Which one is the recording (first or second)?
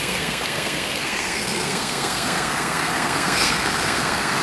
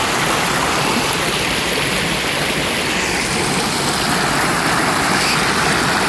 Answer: second